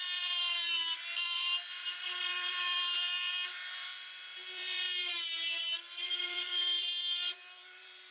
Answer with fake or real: fake